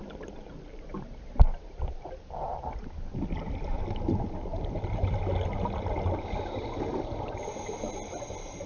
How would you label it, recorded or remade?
recorded